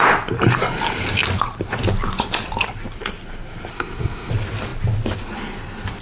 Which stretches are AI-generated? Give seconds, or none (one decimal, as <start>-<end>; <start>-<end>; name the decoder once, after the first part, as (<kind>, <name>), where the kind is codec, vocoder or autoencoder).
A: 3.7-4.3 (codec, SNAC)